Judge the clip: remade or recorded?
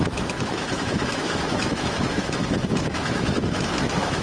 remade